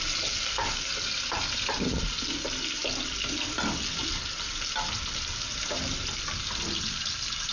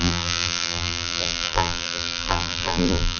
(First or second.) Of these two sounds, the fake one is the second